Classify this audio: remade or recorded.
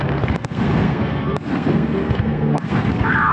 remade